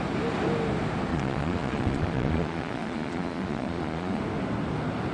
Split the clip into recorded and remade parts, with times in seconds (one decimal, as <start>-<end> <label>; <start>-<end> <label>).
0.0-1.1 recorded; 1.1-4.2 remade; 4.2-5.1 recorded